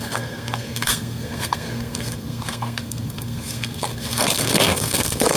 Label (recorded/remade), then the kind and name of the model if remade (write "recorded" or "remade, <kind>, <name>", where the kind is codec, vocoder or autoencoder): remade, codec, SNAC